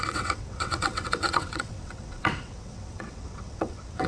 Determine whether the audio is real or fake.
fake